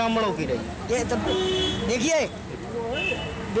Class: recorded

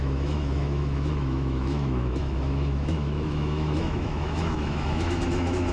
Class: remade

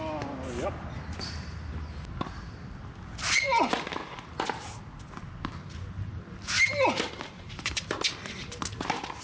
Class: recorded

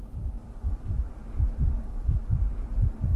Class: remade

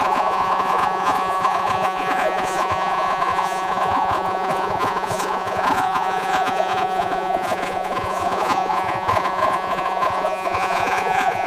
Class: remade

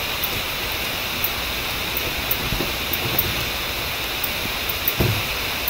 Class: recorded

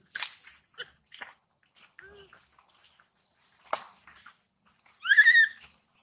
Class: recorded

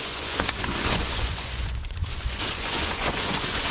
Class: remade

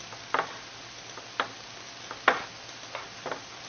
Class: recorded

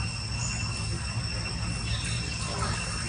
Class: recorded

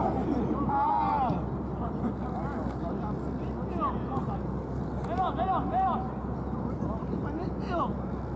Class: recorded